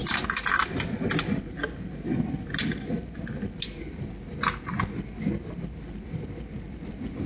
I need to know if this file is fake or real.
real